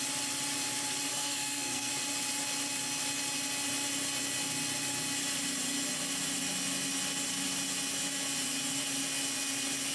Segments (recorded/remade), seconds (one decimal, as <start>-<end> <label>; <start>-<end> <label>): 0.0-1.1 recorded; 1.1-1.9 remade; 1.9-9.9 recorded